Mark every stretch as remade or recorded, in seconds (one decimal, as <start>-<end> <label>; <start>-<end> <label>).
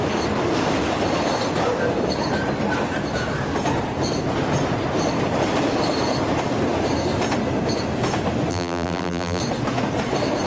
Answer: 0.0-8.5 recorded; 8.5-9.4 remade; 9.4-10.5 recorded